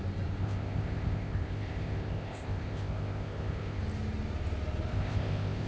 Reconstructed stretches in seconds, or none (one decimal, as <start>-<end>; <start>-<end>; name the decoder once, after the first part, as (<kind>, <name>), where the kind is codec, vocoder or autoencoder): 0.4-3.8 (codec, ZipCodec); 4.9-5.7